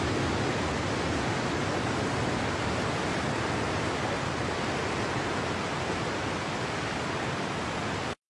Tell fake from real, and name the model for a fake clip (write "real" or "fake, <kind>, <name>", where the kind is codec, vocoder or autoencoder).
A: real